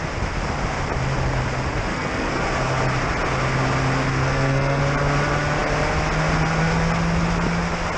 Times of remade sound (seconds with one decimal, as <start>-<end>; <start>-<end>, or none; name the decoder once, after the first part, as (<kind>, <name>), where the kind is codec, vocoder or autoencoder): 1.9-2.4 (codec, SNAC); 4.1-4.8